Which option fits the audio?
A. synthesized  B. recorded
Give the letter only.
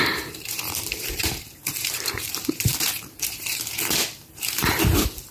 A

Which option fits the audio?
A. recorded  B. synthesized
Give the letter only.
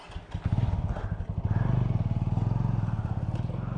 A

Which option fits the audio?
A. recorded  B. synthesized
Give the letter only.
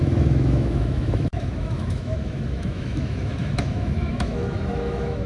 B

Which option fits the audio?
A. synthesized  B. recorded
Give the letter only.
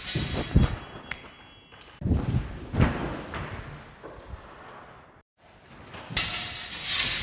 B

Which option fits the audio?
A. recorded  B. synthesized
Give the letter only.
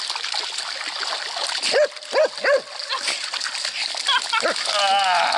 A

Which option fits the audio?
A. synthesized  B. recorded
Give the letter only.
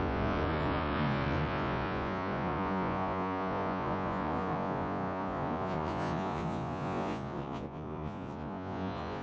A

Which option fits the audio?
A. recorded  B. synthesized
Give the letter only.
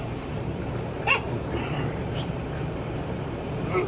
B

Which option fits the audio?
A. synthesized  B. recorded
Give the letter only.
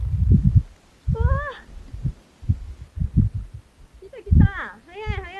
B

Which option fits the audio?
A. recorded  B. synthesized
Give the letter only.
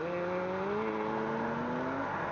A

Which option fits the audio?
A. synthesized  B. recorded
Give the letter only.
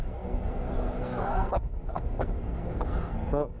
A